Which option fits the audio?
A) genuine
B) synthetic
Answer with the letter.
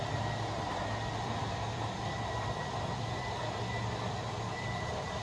B